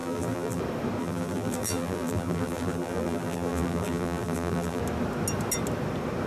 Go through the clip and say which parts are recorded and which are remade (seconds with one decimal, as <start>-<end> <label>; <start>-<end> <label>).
0.0-0.6 remade; 0.6-1.0 recorded; 1.0-4.8 remade; 4.8-6.3 recorded